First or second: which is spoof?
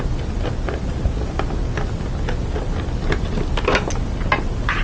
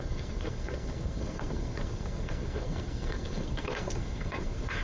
second